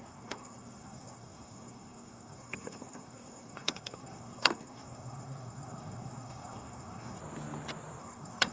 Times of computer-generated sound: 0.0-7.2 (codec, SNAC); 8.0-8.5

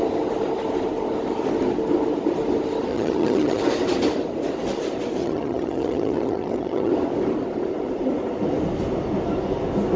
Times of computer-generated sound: 2.9-3.6 (vocoder, HiFi-GAN); 5.2-6.9

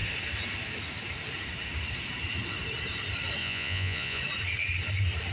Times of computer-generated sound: 3.4-4.2 (vocoder, Vocos)

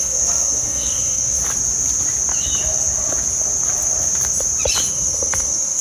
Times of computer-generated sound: 0.0-1.4 (codec, SNAC); 4.9-5.8

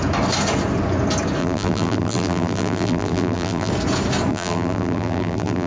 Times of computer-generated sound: 1.4-3.7 (vocoder, BigVGAN v2); 4.3-5.7

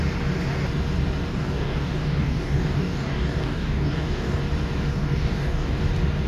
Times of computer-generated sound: 1.3-4.4 (codec, DAC); 4.9-5.8